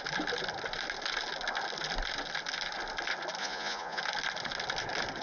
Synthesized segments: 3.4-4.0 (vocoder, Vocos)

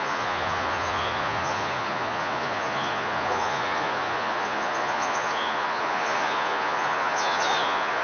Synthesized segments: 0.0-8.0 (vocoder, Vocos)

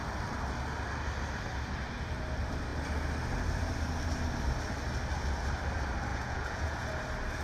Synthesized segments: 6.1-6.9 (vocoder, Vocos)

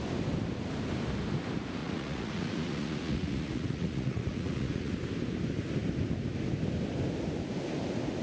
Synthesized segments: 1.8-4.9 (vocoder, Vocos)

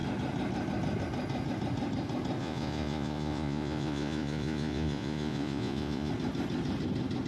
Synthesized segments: 2.4-6.1 (vocoder, Vocos)